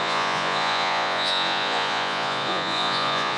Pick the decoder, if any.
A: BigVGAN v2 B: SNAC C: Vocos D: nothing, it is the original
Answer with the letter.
C